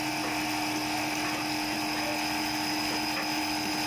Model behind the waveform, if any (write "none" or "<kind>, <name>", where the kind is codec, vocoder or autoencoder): none